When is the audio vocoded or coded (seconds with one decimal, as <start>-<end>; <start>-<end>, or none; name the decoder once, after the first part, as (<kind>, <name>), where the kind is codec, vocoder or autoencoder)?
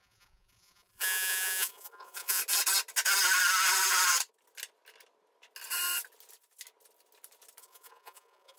0.0-2.4 (vocoder, Vocos); 7.6-8.6